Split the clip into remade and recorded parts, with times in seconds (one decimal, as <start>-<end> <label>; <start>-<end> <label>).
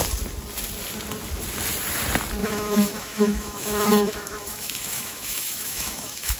0.0-2.4 recorded; 2.4-6.4 remade